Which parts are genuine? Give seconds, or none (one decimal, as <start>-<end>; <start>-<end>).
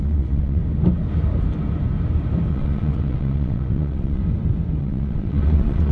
0.6-2.5; 4.2-4.8